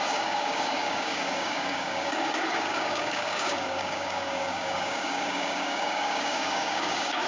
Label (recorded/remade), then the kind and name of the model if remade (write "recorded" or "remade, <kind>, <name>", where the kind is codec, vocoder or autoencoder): remade, codec, DAC